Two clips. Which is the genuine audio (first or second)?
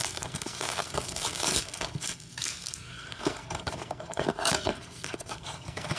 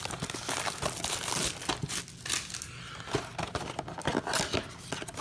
second